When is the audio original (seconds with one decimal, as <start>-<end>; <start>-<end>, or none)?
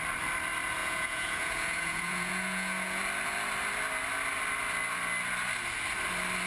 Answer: 0.0-0.8; 3.0-6.5